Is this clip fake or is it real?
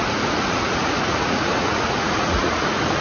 fake